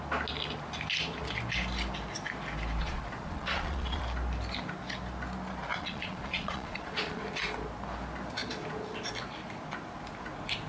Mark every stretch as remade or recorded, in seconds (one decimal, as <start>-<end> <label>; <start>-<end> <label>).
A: 0.0-2.8 recorded; 2.8-4.0 remade; 4.0-5.7 recorded; 5.7-7.2 remade; 7.2-10.7 recorded